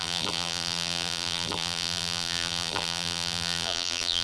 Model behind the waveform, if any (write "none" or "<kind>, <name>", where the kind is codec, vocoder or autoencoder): vocoder, BigVGAN v2